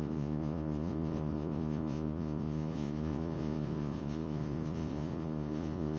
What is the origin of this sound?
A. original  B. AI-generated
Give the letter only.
B